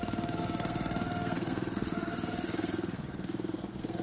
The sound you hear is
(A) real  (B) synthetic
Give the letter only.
B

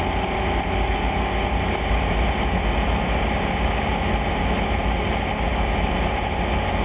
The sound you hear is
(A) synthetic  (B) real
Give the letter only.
B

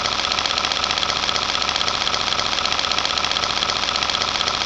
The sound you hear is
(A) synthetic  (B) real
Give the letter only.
B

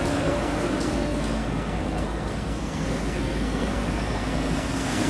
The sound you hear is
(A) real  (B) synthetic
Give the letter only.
B